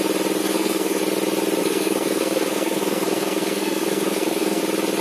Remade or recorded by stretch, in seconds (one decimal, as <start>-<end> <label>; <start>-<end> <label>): 0.0-0.4 recorded; 0.4-1.0 remade; 1.0-1.6 recorded; 1.6-4.6 remade; 4.6-5.0 recorded